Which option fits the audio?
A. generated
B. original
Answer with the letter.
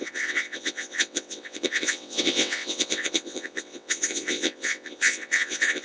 A